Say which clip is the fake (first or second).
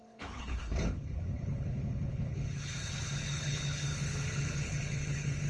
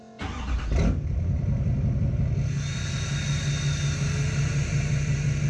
first